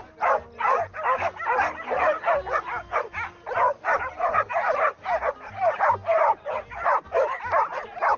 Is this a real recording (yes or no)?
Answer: yes